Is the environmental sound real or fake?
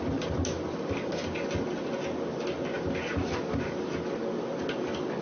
real